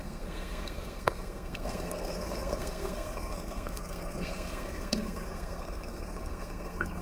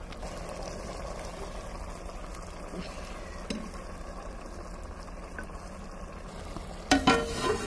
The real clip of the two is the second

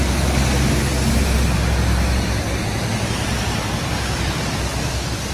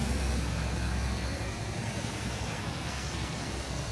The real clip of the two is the first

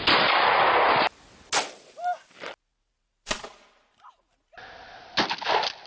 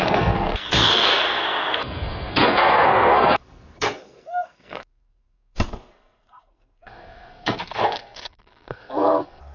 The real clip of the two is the first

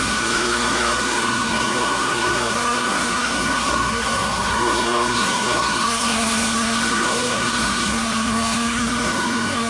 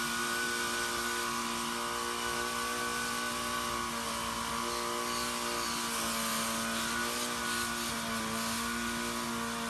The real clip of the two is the second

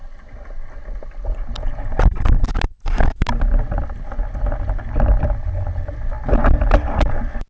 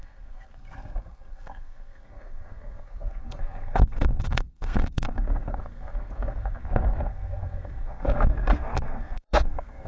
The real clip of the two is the first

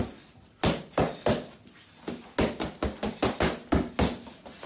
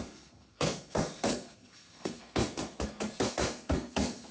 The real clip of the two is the first